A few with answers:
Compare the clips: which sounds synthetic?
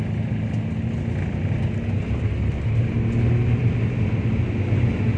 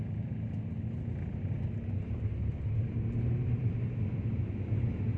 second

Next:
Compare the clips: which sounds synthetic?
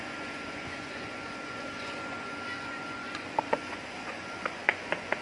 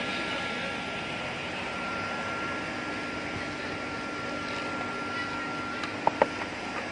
first